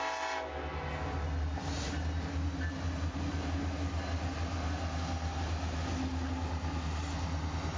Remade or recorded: recorded